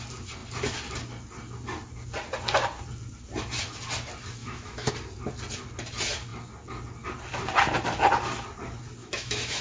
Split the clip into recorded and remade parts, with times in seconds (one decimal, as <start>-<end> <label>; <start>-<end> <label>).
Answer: 0.0-4.4 recorded; 4.4-4.9 remade; 4.9-9.0 recorded; 9.0-9.6 remade